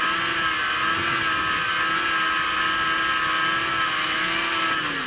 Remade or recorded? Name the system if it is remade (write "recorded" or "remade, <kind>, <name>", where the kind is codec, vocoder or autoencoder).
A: recorded